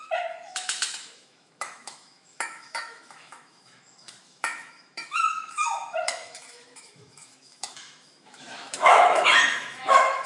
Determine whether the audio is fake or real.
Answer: fake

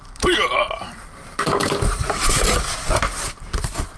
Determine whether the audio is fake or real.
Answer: real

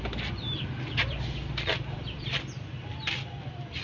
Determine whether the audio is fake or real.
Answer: fake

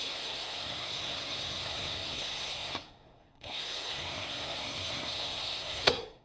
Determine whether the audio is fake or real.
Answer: fake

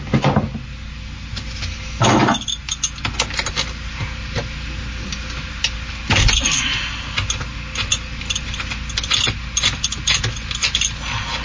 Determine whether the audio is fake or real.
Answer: real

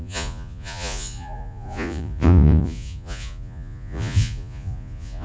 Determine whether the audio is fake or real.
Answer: fake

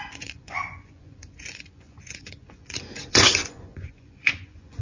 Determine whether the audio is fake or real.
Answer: fake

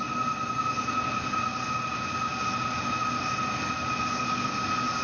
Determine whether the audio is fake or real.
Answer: real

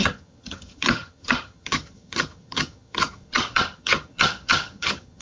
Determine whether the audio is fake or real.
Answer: fake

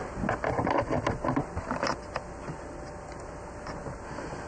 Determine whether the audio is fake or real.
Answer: real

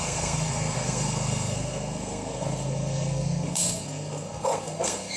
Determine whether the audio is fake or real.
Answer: fake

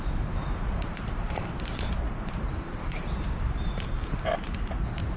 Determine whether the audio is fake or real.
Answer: fake